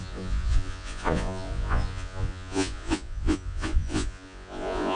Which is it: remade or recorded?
remade